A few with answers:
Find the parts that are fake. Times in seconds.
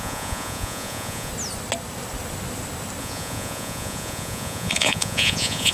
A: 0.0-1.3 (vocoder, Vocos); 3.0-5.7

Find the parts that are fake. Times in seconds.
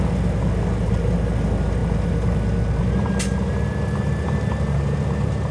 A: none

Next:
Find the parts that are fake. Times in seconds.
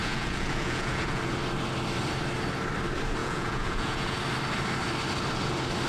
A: 0.0-1.2 (vocoder, Vocos); 3.2-4.2